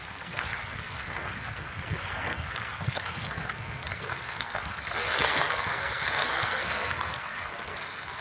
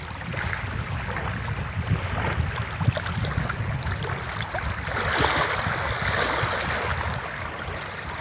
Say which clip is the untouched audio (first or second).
second